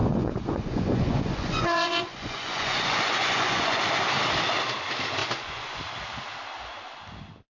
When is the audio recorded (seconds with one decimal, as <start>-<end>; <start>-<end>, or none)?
3.8-5.2; 5.8-7.5